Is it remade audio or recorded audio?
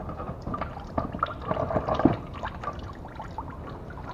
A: recorded